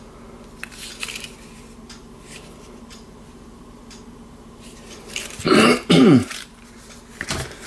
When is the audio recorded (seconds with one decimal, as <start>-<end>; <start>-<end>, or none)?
0.0-2.0; 6.6-7.7